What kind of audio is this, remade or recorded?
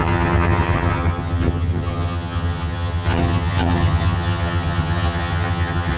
remade